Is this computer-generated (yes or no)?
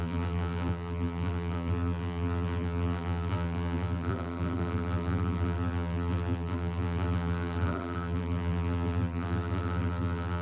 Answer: yes